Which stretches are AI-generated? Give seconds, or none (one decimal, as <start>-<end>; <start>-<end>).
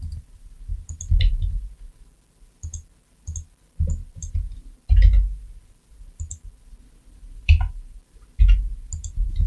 none